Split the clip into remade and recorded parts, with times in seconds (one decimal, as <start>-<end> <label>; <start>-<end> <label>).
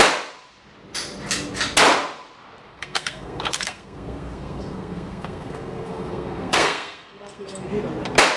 0.0-2.7 recorded; 2.7-7.7 remade; 7.7-8.4 recorded